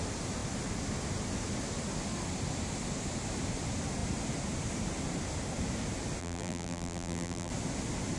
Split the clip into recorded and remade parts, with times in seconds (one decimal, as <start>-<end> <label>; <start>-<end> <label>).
0.0-6.2 recorded; 6.2-7.5 remade; 7.5-8.2 recorded